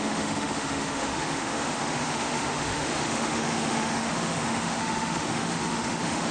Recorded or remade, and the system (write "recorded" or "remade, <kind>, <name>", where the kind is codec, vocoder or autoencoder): remade, autoencoder, DAC-VAE